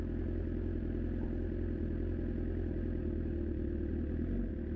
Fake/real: real